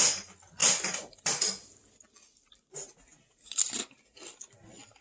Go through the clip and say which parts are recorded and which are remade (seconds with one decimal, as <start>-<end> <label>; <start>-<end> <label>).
0.0-5.0 recorded